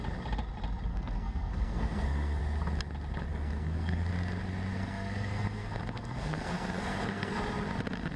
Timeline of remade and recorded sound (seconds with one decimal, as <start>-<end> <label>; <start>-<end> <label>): 0.0-0.9 recorded; 0.9-2.4 remade; 2.4-3.3 recorded; 3.3-4.1 remade; 4.1-4.7 recorded; 4.7-7.4 remade; 7.4-8.2 recorded